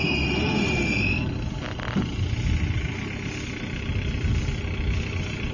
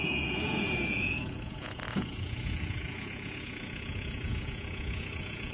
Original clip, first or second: first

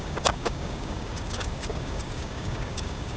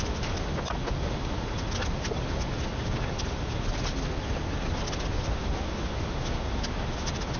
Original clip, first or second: second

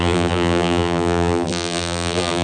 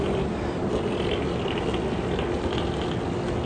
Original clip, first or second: second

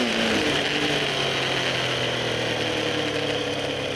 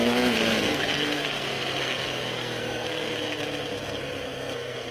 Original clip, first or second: first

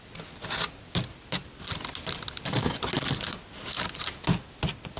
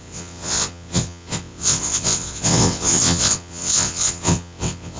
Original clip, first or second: first